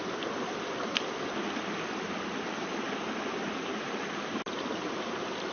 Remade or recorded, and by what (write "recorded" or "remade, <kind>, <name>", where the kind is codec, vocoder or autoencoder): recorded